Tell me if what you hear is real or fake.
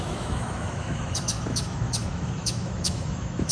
fake